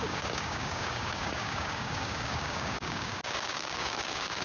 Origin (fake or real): fake